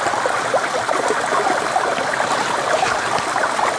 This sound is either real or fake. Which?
real